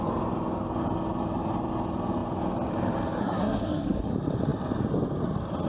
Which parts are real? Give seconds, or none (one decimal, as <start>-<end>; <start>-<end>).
0.0-3.2; 4.1-5.7